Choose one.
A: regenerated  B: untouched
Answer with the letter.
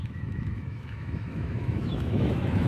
A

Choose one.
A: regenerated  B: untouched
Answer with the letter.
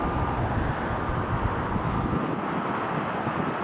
B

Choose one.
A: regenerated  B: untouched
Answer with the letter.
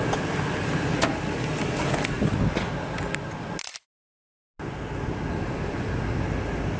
B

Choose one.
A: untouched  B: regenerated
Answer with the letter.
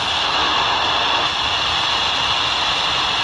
A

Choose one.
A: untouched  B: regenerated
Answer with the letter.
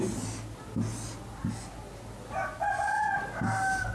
A